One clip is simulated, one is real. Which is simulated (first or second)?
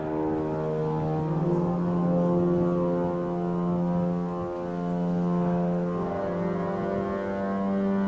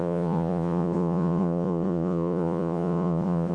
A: second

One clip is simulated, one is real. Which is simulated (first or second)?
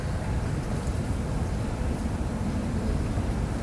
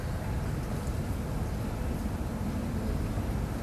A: first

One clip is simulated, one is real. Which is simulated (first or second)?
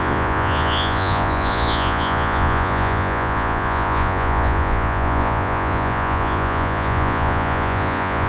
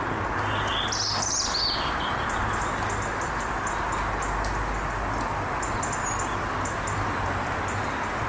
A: first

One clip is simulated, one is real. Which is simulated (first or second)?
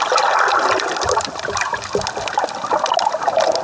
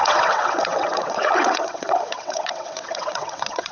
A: second